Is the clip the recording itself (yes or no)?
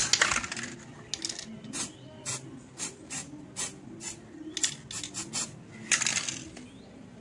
yes